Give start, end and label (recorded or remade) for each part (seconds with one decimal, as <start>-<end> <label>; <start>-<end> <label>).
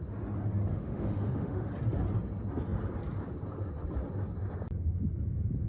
0.0-0.7 recorded; 0.7-1.7 remade; 1.7-5.7 recorded